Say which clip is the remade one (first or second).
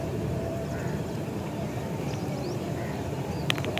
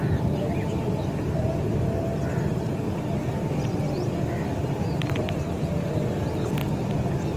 first